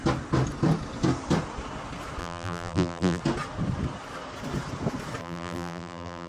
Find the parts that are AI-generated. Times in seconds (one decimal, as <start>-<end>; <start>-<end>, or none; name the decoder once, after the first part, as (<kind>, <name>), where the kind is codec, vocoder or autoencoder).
2.2-3.2 (vocoder, BigVGAN v2); 5.2-6.3